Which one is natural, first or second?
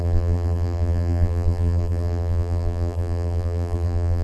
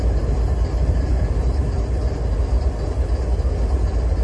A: second